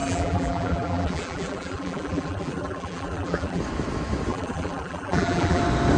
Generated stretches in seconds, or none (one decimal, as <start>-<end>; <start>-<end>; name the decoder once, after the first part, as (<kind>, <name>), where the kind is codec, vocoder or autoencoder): 0.0-3.6 (vocoder, BigVGAN v2); 4.3-5.6

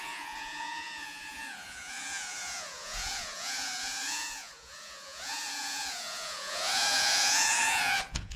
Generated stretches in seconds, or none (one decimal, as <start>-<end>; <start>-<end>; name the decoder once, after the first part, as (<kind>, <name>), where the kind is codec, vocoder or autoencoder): 0.0-8.4 (vocoder, Vocos)

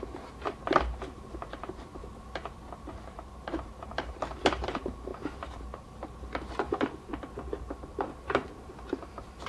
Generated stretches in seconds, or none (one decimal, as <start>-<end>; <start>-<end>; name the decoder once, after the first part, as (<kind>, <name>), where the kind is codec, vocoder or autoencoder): 0.0-2.0 (vocoder, BigVGAN v2); 2.9-7.1; 7.6-9.5